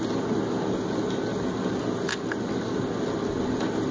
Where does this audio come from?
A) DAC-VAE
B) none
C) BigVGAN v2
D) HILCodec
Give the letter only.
B